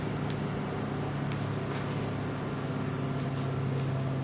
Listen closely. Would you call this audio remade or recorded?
recorded